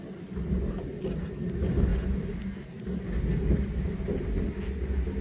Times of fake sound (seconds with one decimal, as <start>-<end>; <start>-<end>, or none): none